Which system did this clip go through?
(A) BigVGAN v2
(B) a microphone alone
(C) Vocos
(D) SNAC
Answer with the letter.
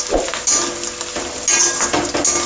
B